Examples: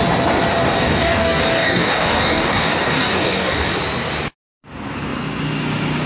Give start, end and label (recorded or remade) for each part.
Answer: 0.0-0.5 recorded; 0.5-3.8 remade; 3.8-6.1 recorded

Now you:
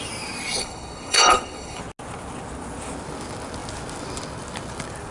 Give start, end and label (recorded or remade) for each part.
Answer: 0.0-0.6 recorded; 0.6-1.8 remade; 1.8-5.1 recorded

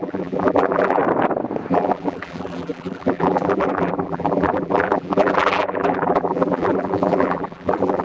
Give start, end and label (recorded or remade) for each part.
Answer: 0.0-1.0 remade; 1.0-1.7 recorded; 1.7-8.0 remade

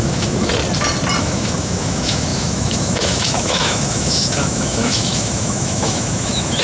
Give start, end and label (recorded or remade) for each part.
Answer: 0.0-0.5 remade; 0.5-1.2 recorded; 1.2-6.6 remade

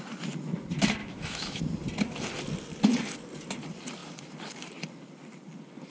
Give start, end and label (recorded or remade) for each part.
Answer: 0.0-1.0 recorded; 1.0-1.6 remade; 1.6-5.9 recorded

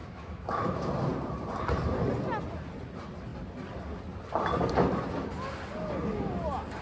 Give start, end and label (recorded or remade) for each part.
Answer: 0.0-0.9 remade; 0.9-6.8 recorded